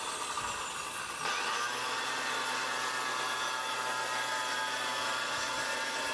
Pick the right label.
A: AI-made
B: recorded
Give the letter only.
B